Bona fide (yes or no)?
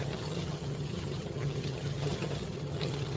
no